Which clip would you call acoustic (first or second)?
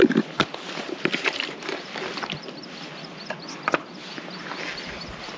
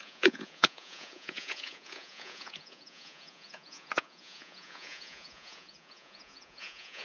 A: first